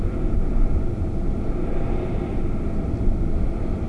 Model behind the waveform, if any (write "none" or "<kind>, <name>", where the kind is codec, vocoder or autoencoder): none